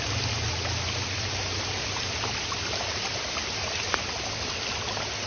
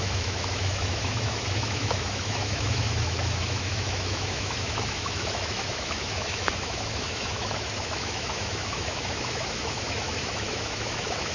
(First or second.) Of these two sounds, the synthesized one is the second